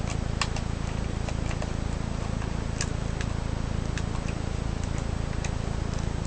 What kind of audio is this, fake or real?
real